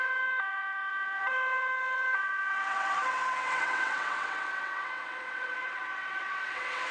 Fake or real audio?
fake